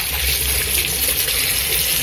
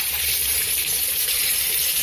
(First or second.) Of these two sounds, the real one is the first